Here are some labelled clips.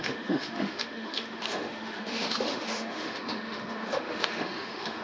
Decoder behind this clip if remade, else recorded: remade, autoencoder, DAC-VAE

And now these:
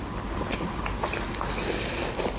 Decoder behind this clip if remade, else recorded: recorded